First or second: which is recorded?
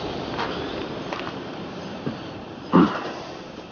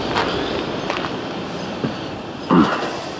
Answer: second